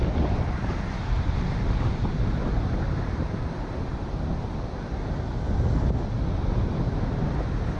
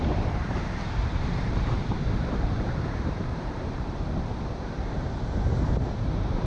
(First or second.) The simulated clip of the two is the second